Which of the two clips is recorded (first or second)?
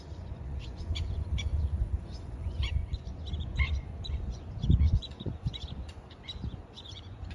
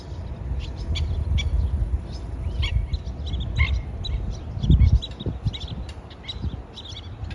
second